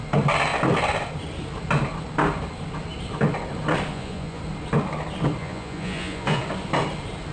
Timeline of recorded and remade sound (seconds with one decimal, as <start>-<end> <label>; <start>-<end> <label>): 0.0-3.9 recorded; 3.9-4.4 remade; 4.4-5.4 recorded; 5.4-6.4 remade; 6.4-7.3 recorded